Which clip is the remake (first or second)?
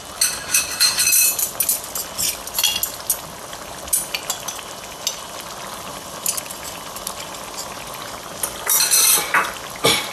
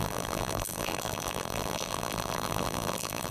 second